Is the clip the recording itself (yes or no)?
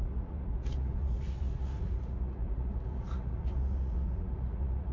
no